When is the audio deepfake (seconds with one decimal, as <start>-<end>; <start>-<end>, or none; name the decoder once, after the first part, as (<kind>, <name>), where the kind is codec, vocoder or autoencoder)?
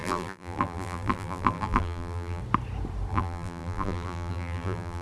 0.0-2.4 (vocoder, BigVGAN v2); 3.1-5.0